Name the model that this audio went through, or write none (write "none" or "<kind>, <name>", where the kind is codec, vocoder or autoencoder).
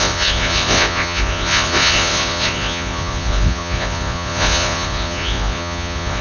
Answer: vocoder, Vocos